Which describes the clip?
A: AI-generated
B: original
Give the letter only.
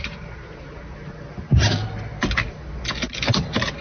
B